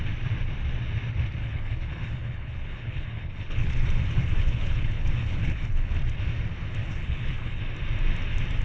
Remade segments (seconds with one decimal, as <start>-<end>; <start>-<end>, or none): 1.4-5.9; 6.8-7.6